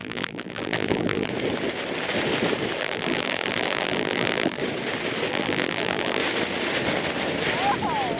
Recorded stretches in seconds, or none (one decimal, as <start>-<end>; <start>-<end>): 1.3-2.8; 4.6-5.3; 6.2-8.2